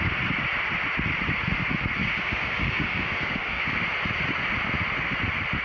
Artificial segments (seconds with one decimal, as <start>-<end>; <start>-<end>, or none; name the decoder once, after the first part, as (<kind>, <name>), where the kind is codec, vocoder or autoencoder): 2.0-3.8 (codec, DAC)

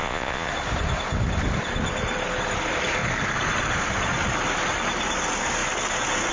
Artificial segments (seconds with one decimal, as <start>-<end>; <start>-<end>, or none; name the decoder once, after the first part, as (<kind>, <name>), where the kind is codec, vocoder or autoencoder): 0.0-0.5 (vocoder, Vocos)